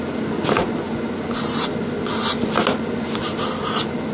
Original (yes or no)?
yes